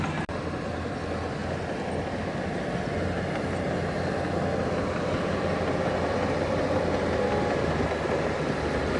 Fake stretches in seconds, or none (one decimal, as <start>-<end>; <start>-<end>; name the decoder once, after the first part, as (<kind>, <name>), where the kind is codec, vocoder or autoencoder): none